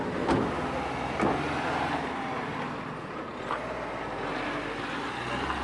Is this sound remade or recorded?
recorded